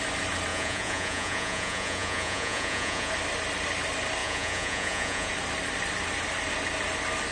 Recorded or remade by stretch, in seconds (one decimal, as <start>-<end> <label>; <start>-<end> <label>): 0.0-0.5 recorded; 0.5-3.1 remade; 3.1-4.2 recorded; 4.2-5.3 remade; 5.3-7.3 recorded